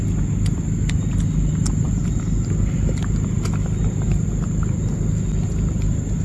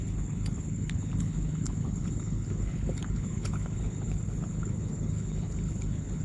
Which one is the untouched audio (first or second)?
first